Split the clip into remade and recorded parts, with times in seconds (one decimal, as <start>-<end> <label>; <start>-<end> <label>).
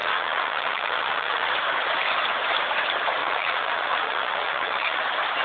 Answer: 0.0-1.5 remade; 1.5-3.2 recorded; 3.2-5.0 remade; 5.0-5.4 recorded